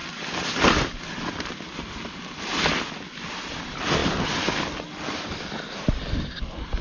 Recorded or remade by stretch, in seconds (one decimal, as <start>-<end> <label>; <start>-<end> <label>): 0.0-6.8 recorded